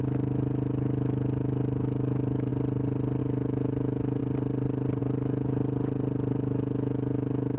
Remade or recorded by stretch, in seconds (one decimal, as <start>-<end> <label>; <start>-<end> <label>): 0.0-2.5 remade; 2.5-3.2 recorded; 3.2-4.2 remade; 4.2-5.0 recorded; 5.0-5.6 remade; 5.6-6.3 recorded; 6.3-7.6 remade